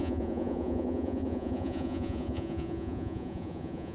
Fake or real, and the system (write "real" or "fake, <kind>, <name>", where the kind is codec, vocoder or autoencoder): fake, vocoder, Vocos